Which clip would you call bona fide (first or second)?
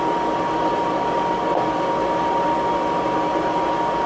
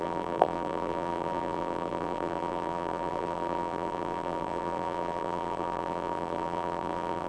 first